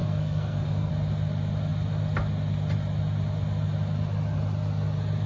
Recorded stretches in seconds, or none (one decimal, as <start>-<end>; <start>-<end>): 0.9-5.3